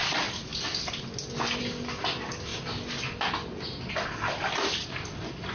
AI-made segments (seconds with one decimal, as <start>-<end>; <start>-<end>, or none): none